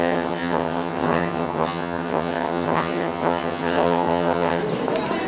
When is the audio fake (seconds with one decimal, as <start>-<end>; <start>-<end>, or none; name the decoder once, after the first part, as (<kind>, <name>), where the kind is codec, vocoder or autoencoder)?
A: 0.0-4.6 (vocoder, HiFi-GAN)